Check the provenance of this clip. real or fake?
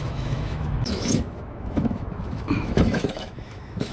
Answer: fake